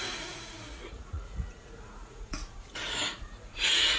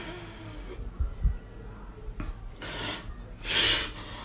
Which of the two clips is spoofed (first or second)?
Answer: first